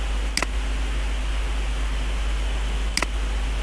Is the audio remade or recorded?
recorded